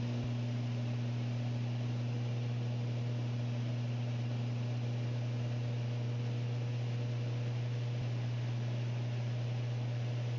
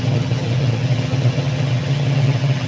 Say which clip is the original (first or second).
first